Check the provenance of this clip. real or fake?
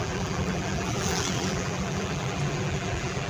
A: fake